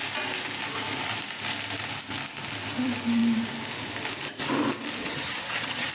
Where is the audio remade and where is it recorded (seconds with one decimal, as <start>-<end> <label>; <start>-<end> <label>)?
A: 0.0-5.0 recorded; 5.0-5.9 remade